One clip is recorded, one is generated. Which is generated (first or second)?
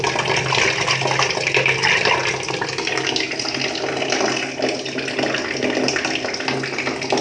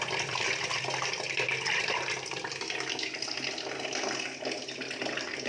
second